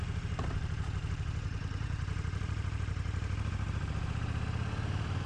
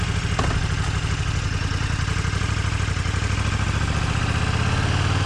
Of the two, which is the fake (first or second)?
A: first